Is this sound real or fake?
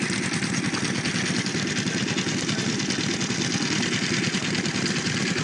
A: real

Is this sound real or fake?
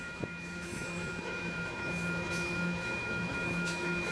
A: fake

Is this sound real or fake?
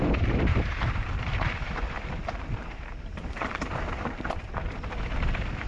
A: fake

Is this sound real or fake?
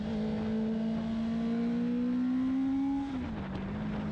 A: real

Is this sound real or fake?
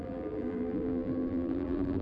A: fake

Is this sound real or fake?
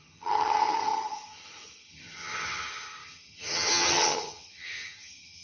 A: fake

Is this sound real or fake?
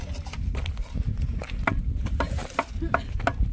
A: real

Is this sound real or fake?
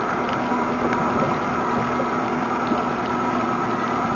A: real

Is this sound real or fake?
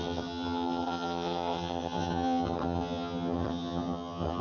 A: fake